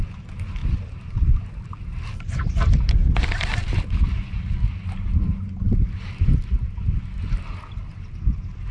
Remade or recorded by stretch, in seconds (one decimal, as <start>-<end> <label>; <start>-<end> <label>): 0.0-0.6 recorded; 0.6-5.5 remade; 5.5-8.7 recorded